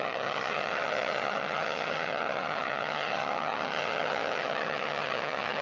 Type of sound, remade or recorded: remade